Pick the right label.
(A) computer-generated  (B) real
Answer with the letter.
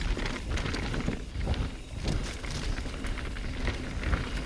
B